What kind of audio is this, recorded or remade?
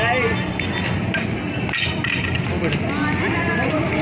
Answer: recorded